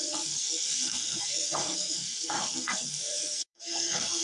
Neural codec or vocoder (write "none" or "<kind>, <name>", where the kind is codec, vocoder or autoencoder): codec, SNAC